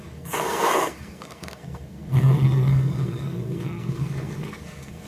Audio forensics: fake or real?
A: fake